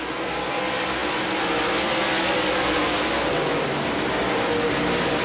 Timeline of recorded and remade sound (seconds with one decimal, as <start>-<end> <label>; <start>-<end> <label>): 0.0-5.2 recorded